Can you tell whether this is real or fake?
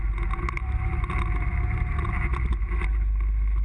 real